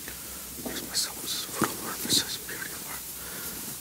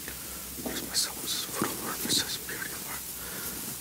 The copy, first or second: first